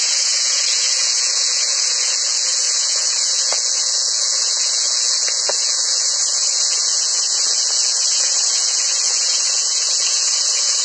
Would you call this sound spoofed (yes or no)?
yes